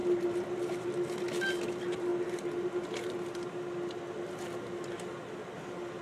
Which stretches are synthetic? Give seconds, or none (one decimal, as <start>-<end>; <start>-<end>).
0.0-1.2; 2.1-6.0